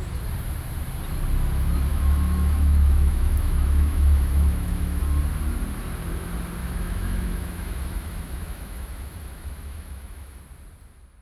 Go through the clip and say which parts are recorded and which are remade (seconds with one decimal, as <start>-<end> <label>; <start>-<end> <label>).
0.0-1.9 recorded; 1.9-5.0 remade; 5.0-6.6 recorded; 6.6-10.4 remade; 10.4-11.2 recorded